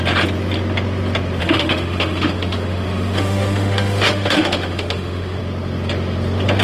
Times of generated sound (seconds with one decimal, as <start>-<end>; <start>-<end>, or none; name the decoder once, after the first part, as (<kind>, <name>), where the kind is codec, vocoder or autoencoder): 1.4-5.4 (autoencoder, DAC-VAE)